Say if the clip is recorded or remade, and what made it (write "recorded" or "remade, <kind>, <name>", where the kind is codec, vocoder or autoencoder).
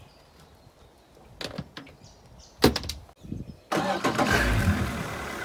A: recorded